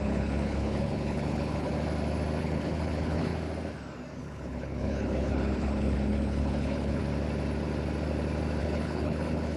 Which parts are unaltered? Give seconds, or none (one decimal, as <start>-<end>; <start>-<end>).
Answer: 1.7-2.4; 3.3-4.2; 7.0-8.6